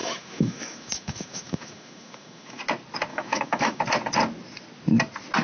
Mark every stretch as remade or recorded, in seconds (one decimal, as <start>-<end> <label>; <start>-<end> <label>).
0.0-2.6 remade; 2.6-3.1 recorded; 3.1-3.8 remade; 3.8-5.4 recorded